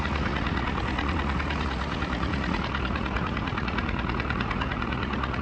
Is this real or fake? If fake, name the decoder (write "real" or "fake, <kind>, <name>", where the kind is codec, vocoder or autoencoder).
fake, vocoder, Vocos